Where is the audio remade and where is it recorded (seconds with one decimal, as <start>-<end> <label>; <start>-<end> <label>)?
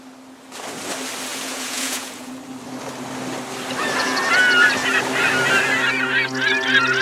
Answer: 0.0-1.3 recorded; 1.3-2.3 remade; 2.3-7.0 recorded